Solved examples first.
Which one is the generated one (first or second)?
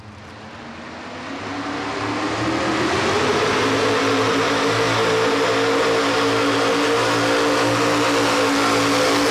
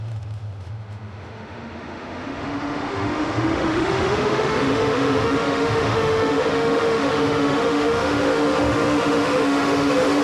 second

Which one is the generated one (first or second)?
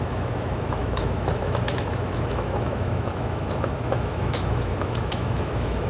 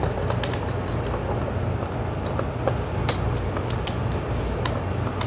first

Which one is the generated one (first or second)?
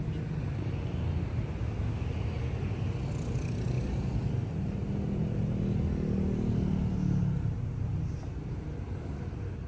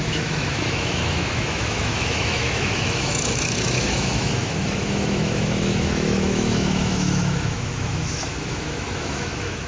second